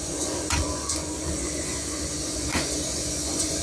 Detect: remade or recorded remade